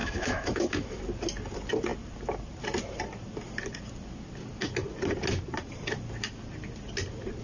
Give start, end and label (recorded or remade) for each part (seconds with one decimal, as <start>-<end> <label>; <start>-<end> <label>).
0.0-1.0 remade; 1.0-7.4 recorded